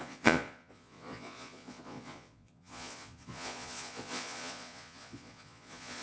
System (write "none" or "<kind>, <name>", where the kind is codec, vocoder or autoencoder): vocoder, Vocos